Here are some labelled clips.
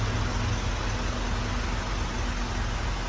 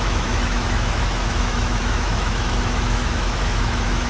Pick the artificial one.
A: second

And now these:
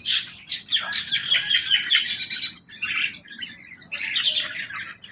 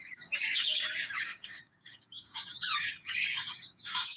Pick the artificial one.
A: second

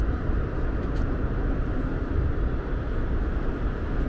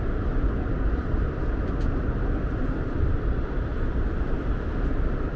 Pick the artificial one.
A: second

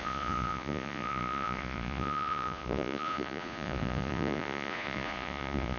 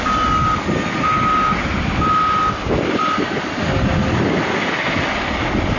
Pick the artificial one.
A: first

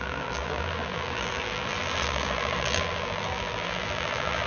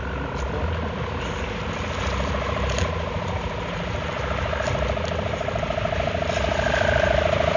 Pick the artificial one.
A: first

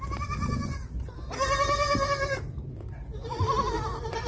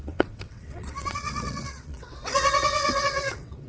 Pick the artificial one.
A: second